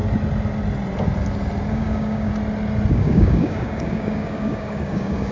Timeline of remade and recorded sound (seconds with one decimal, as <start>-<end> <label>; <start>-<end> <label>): 0.0-1.7 recorded; 1.7-2.3 remade; 2.3-2.9 recorded; 2.9-5.3 remade